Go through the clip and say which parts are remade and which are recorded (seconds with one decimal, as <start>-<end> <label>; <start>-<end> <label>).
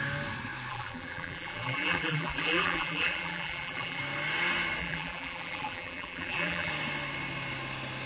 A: 0.0-0.7 recorded; 0.7-4.0 remade; 4.0-4.8 recorded; 4.8-6.7 remade; 6.7-8.1 recorded